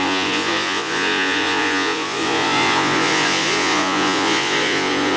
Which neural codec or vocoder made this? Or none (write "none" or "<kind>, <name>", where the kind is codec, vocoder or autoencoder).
vocoder, Vocos